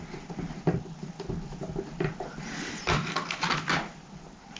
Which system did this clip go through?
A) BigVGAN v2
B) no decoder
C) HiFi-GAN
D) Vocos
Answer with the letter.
B